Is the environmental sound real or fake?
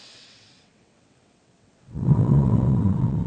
fake